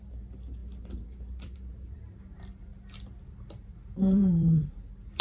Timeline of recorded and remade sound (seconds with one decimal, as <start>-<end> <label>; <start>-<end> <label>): 0.0-2.7 remade; 2.7-3.3 recorded; 3.3-5.2 remade